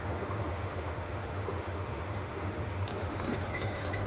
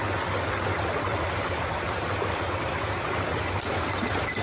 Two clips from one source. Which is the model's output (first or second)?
first